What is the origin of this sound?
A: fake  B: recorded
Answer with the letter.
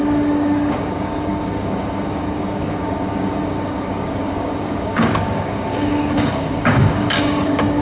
A